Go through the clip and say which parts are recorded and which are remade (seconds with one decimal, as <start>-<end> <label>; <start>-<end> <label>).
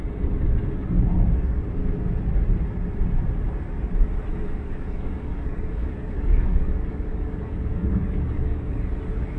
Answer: 0.0-4.3 recorded; 4.3-8.8 remade; 8.8-9.4 recorded